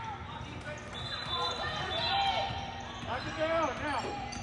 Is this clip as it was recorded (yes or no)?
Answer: yes